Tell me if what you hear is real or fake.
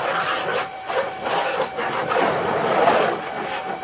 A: fake